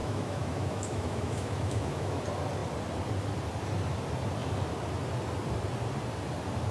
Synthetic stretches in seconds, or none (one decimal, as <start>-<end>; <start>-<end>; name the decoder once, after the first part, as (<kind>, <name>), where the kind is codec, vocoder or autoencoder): 0.0-2.2 (autoencoder, DAC-VAE)